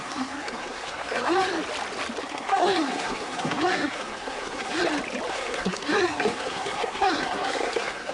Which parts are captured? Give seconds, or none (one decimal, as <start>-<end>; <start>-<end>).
1.5-2.2; 4.8-5.3

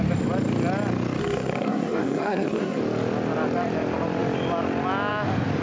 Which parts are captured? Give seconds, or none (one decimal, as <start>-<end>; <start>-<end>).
0.0-1.2; 2.8-5.6

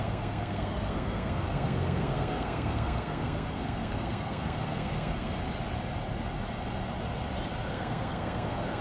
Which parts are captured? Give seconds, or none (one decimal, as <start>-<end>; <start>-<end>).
5.3-7.7

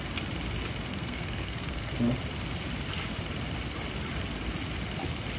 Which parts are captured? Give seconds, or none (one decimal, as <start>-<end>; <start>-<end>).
0.0-0.9; 1.9-5.4

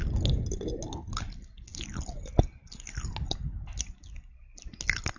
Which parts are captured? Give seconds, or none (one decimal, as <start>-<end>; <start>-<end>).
0.0-5.2

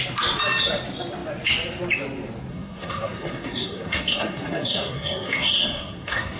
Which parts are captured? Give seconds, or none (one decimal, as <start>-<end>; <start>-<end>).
0.0-2.5

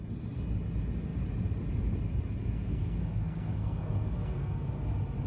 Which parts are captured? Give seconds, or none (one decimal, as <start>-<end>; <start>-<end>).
0.0-2.4; 4.7-5.3